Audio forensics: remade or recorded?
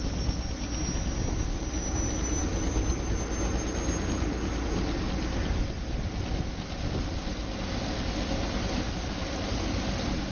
recorded